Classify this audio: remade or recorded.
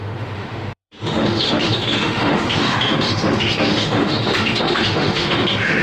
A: remade